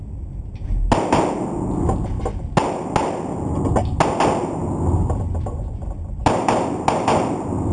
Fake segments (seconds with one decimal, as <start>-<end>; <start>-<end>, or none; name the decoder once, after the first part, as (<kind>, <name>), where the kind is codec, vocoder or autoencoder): none